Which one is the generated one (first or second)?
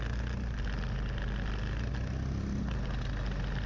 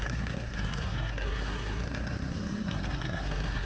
second